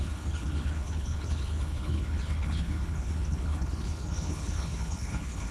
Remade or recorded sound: remade